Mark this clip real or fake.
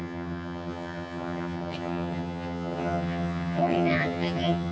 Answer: fake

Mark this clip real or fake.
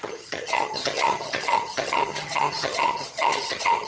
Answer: fake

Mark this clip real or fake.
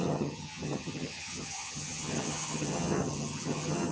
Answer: fake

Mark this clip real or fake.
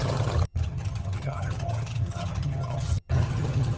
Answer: fake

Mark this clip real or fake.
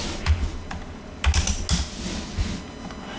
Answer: real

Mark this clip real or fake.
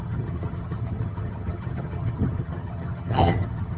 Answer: fake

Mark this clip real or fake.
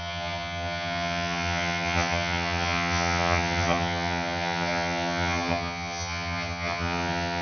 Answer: fake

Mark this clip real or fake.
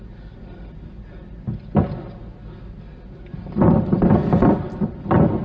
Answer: real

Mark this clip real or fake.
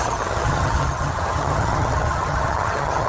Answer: fake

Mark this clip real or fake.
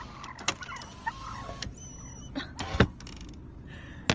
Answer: real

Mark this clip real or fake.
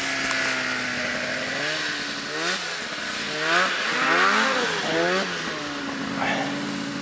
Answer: real